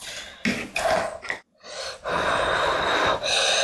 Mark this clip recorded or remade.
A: recorded